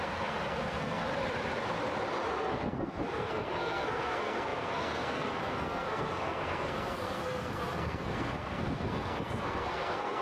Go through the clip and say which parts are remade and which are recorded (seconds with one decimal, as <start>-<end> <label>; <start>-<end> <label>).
0.0-1.1 remade; 1.1-2.5 recorded; 2.5-10.2 remade